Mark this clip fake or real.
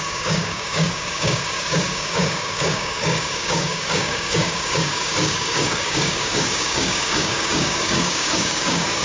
fake